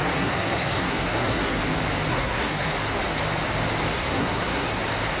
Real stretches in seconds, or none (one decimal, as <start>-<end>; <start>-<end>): 1.6-2.1; 2.7-3.9; 4.8-5.2